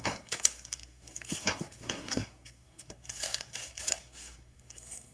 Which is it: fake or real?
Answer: fake